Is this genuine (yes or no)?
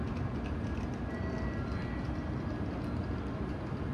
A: yes